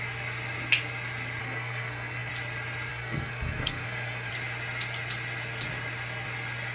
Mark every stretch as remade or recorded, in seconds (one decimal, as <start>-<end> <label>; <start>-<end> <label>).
0.0-1.4 recorded; 1.4-2.3 remade; 2.3-2.9 recorded; 2.9-4.3 remade; 4.3-6.7 recorded

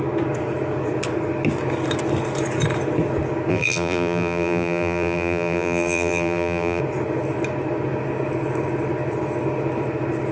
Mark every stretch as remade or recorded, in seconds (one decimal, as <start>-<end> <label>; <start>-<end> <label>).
0.0-3.5 recorded; 3.5-6.8 remade; 6.8-10.3 recorded